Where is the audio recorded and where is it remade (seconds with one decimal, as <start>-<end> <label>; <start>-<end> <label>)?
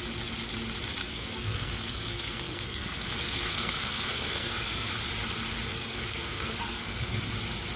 0.0-1.0 recorded; 1.0-4.9 remade; 4.9-5.7 recorded; 5.7-7.2 remade; 7.2-7.8 recorded